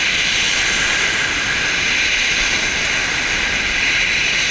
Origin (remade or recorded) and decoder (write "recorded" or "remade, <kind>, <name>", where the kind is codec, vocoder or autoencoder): recorded